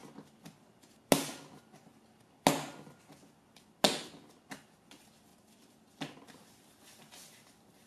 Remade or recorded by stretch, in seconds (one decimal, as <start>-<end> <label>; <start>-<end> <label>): 0.0-7.9 recorded